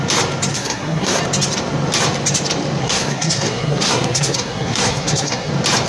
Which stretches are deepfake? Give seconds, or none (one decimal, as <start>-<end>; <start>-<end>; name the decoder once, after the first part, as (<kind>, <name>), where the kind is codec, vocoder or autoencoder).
0.5-1.2 (codec, SNAC); 2.8-5.5